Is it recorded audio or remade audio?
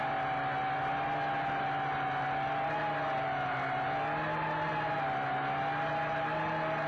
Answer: recorded